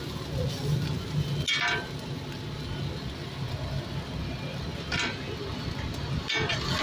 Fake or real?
real